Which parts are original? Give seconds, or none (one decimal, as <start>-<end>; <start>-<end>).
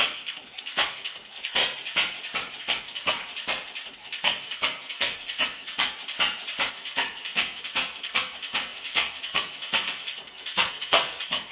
1.6-2.6; 3.2-3.9; 6.0-6.7